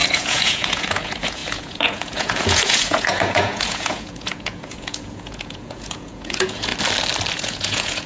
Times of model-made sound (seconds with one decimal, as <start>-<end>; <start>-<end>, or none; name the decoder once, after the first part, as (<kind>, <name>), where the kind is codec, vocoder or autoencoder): 0.0-6.7 (vocoder, Vocos); 7.3-8.1